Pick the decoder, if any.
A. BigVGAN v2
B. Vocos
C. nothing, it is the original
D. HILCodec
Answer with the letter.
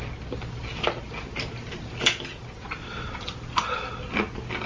C